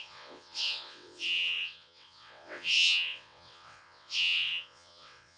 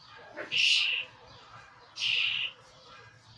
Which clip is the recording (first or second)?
second